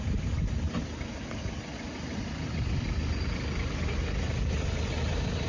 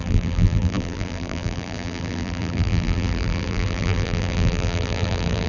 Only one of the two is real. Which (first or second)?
first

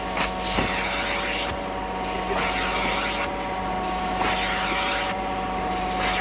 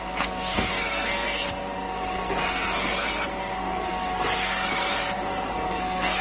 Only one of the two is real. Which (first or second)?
first